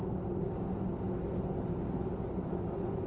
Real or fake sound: real